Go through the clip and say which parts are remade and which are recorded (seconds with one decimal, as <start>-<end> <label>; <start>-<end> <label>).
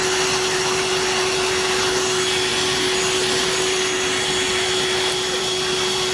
0.0-6.1 recorded